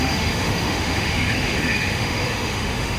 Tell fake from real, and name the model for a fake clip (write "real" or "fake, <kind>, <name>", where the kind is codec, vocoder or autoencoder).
fake, autoencoder, DAC-VAE